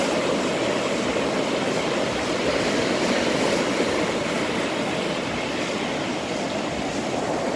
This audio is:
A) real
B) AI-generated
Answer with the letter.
A